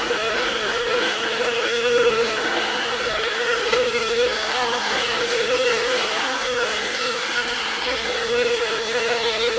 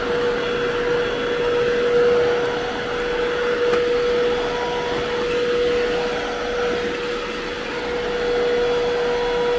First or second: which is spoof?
first